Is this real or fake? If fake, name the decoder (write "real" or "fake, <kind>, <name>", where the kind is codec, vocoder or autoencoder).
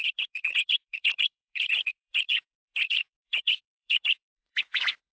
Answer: fake, vocoder, Vocos